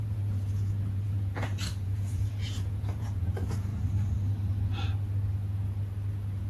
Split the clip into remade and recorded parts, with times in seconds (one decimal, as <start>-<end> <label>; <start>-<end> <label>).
0.0-3.7 remade; 3.7-6.1 recorded; 6.1-6.5 remade